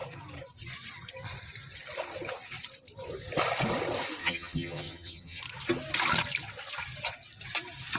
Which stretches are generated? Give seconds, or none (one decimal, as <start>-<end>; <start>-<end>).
4.2-5.4